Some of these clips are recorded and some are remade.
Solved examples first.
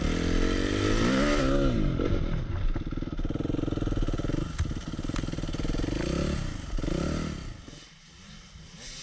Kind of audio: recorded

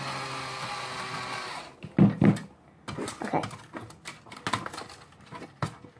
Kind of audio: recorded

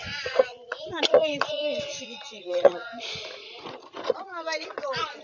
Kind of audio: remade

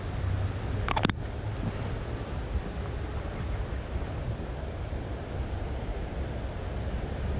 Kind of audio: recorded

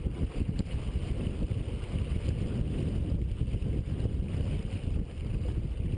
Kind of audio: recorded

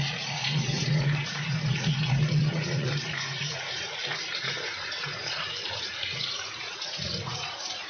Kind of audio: remade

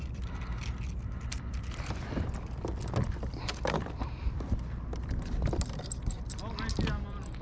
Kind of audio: recorded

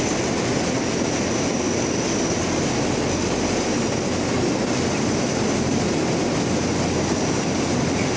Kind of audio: recorded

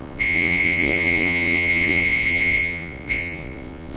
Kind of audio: remade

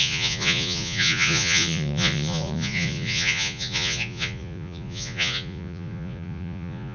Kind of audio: remade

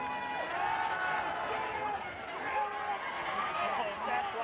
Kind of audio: recorded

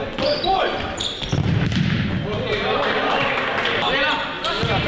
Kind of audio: recorded